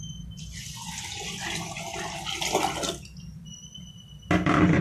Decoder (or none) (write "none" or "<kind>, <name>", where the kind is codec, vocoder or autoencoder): none